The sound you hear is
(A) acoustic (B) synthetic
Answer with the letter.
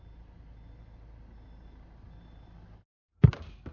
A